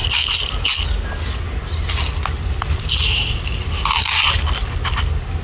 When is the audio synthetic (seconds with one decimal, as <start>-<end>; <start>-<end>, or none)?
none